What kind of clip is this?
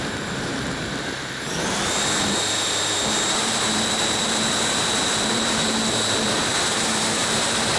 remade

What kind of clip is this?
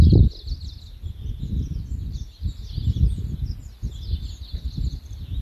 recorded